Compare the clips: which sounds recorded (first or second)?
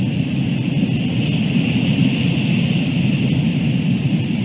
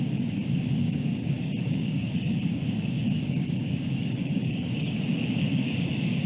first